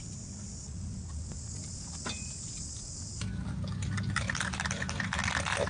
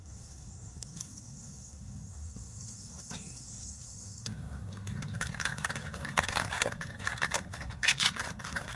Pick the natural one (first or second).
first